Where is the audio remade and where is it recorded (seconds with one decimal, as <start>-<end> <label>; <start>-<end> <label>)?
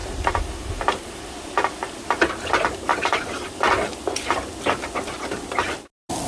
0.0-1.2 remade; 1.2-2.9 recorded; 2.9-3.5 remade; 3.5-6.3 recorded